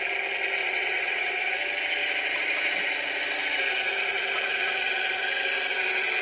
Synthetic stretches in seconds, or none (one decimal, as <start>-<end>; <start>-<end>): 0.6-1.5